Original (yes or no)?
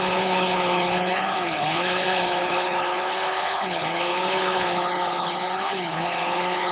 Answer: no